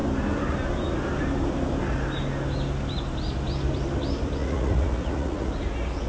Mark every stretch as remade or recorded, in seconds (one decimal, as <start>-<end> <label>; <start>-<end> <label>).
0.0-4.4 recorded; 4.4-5.5 remade; 5.5-6.1 recorded